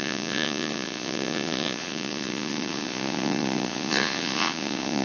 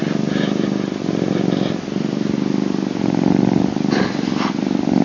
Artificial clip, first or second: first